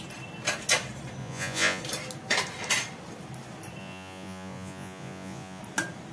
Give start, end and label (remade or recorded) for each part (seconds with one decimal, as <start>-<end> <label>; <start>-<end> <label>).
0.0-1.2 recorded; 1.2-1.8 remade; 1.8-3.8 recorded; 3.8-5.6 remade; 5.6-6.1 recorded